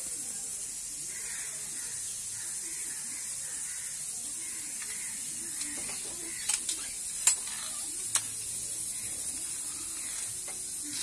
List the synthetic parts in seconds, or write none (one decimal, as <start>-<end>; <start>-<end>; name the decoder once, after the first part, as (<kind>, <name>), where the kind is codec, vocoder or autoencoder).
none